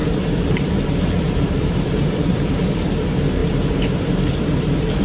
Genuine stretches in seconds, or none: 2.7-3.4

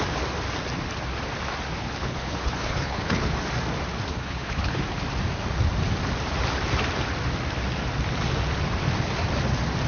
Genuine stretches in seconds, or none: 0.0-2.0; 3.3-4.1; 4.8-9.9

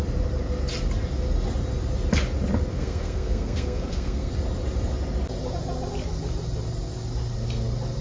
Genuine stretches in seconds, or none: 0.0-2.7; 4.3-8.0

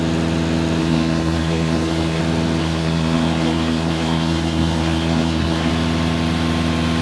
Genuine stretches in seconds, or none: 0.0-0.8; 2.2-2.6; 5.7-7.0